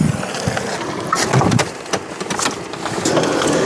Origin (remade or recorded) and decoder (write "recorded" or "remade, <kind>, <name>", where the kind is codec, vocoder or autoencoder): recorded